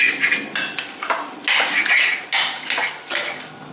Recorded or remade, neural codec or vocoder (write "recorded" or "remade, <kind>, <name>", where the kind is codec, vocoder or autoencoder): recorded